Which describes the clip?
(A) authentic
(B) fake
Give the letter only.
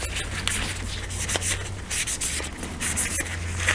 A